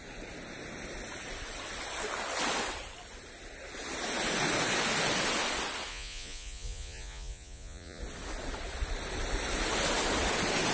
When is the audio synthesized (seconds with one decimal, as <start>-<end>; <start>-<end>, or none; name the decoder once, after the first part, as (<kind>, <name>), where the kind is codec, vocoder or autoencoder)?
5.9-8.0 (vocoder, Vocos)

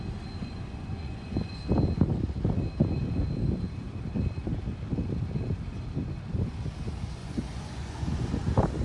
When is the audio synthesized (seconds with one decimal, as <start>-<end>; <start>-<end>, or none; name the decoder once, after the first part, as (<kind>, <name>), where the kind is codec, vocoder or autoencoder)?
0.4-1.6 (vocoder, Vocos); 7.2-8.3

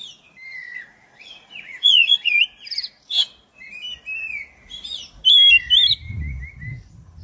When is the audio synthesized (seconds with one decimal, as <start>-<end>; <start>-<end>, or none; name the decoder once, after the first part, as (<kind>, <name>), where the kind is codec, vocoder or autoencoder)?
0.5-2.4 (vocoder, Vocos)

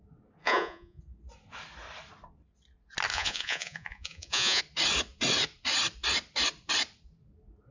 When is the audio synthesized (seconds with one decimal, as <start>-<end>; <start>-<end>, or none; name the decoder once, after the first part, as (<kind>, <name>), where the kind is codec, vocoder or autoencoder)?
0.4-1.0 (vocoder, Vocos); 3.1-4.6

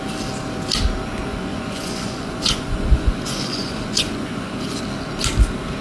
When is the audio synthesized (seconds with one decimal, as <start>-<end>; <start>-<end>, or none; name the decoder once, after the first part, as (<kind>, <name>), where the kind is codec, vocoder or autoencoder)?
1.3-4.8 (vocoder, Vocos)